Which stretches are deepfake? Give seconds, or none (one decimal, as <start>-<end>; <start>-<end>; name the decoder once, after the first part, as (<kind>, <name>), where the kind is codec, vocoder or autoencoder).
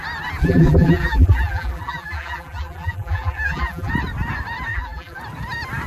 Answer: 0.4-3.9 (vocoder, BigVGAN v2); 4.7-5.2